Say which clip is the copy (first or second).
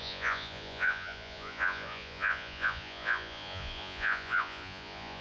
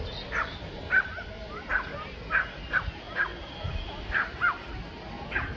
first